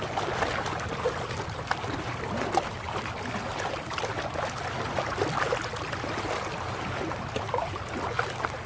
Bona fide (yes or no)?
yes